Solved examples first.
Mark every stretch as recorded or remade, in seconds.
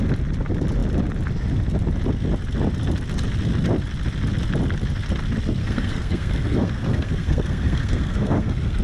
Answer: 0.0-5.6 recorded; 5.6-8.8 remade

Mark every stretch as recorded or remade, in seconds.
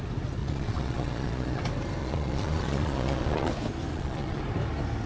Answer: 0.0-0.4 recorded; 0.4-1.6 remade; 1.6-2.0 recorded; 2.0-3.5 remade; 3.5-3.9 recorded; 3.9-4.4 remade; 4.4-5.1 recorded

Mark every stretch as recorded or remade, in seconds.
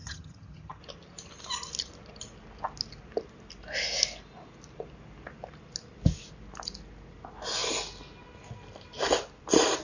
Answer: 0.0-0.8 remade; 0.8-9.8 recorded